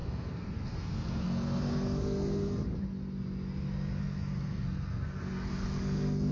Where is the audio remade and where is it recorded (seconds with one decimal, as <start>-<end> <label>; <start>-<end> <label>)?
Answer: 0.0-2.5 remade; 2.5-4.0 recorded; 4.0-6.3 remade